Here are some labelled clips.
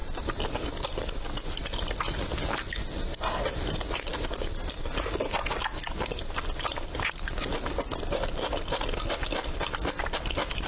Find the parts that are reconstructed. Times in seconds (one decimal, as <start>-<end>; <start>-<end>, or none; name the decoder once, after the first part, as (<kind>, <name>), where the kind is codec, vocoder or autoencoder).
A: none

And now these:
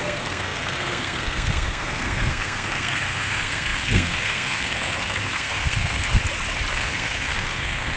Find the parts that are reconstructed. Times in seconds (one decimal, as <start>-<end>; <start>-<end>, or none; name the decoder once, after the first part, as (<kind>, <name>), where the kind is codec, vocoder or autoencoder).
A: 0.0-6.2 (codec, SNAC); 6.7-8.0

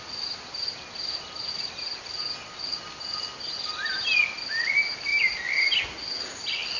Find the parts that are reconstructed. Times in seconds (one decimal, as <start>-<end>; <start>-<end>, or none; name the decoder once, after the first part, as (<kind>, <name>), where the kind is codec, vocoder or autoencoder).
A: none

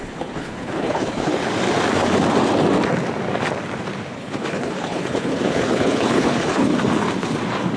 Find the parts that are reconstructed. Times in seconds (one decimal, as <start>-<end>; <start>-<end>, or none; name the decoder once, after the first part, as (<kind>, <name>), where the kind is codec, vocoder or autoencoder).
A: 0.0-1.3 (codec, HILCodec); 4.1-6.7

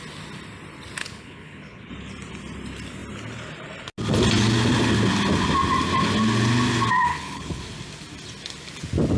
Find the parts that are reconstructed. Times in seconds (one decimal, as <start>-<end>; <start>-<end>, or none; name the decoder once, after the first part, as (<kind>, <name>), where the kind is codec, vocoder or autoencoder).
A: 1.0-1.9 (codec, HILCodec); 7.1-7.6